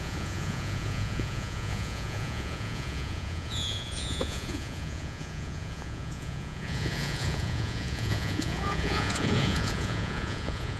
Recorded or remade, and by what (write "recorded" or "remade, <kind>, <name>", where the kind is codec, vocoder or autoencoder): remade, vocoder, Vocos